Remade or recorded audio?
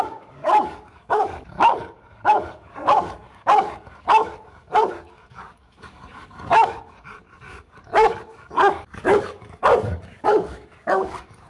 remade